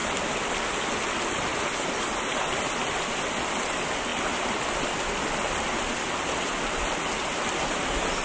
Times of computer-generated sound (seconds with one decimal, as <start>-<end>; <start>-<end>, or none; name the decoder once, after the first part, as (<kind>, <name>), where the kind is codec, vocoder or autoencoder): none